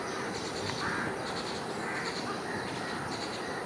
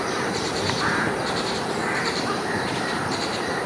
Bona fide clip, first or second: first